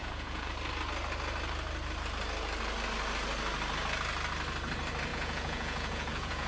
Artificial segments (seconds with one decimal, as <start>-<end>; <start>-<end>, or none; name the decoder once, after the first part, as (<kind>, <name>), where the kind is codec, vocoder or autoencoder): 0.0-0.5 (vocoder, Vocos); 5.1-6.5